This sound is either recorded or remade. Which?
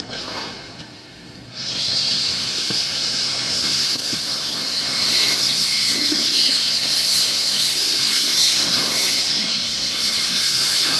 remade